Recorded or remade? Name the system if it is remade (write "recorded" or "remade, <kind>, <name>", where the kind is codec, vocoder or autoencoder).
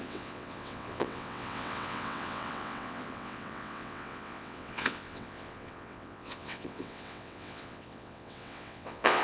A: remade, vocoder, WaveNeXt